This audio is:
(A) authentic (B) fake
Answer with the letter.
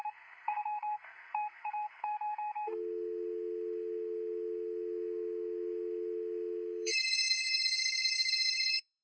B